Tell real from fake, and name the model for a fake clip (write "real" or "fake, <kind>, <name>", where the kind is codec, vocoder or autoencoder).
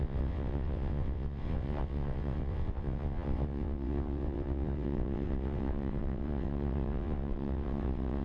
fake, vocoder, WaveNeXt